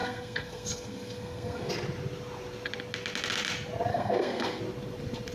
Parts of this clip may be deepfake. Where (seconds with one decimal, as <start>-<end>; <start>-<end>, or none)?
0.0-1.7; 3.9-4.6